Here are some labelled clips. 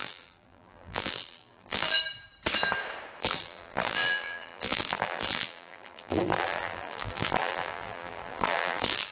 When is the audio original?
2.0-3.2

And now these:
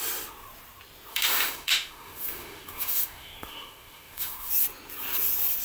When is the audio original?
0.0-1.1; 4.5-5.6

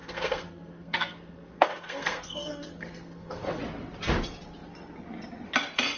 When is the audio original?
3.6-6.0